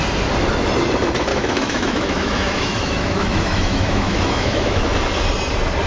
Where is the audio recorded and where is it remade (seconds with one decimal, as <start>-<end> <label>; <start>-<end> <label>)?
0.0-1.3 recorded; 1.3-4.8 remade; 4.8-5.9 recorded